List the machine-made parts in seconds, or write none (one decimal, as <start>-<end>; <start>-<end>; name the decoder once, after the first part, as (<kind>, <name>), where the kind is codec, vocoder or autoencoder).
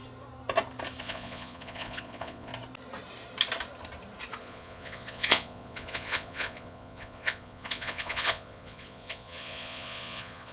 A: 1.0-2.5 (vocoder, Vocos); 4.4-10.5